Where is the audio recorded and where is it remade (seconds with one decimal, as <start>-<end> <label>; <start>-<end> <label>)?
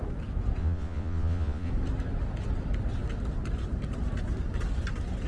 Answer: 0.0-0.6 recorded; 0.6-1.7 remade; 1.7-5.3 recorded